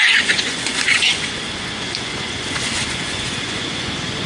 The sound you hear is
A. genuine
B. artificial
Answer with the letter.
B